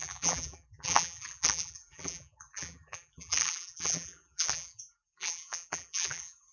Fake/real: fake